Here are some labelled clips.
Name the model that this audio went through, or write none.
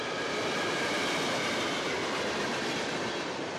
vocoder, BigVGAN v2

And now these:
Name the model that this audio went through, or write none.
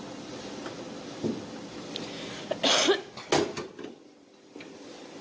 none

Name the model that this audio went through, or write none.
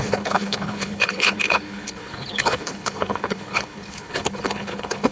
codec, HILCodec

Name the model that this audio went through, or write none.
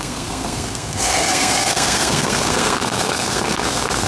codec, SNAC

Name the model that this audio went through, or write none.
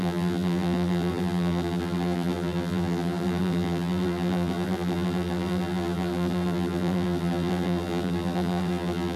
vocoder, BigVGAN v2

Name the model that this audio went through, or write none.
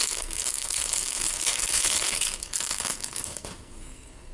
codec, SNAC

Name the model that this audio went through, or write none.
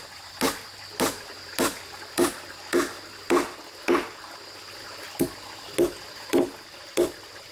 none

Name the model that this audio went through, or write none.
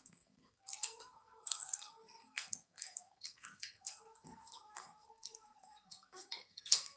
codec, SNAC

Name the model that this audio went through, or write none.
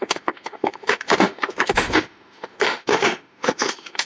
autoencoder, DAC-VAE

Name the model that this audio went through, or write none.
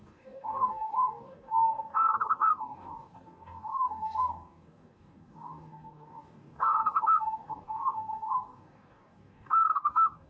codec, DAC